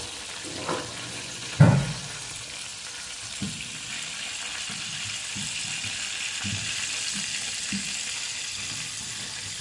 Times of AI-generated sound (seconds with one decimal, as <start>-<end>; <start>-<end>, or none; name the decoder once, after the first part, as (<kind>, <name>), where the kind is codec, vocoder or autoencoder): 0.9-2.0 (vocoder, Vocos)